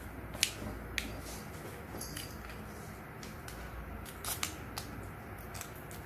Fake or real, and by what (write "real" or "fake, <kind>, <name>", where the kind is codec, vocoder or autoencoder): real